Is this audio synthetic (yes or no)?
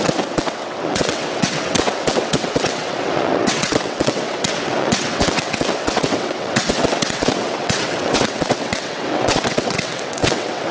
yes